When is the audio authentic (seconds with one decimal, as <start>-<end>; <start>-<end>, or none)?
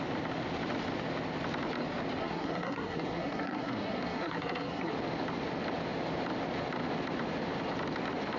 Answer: 0.0-2.2; 4.9-8.4